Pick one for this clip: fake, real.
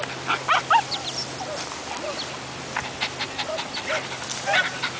real